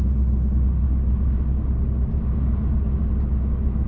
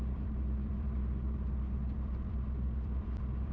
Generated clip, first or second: second